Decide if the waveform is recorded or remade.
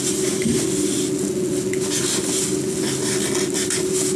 recorded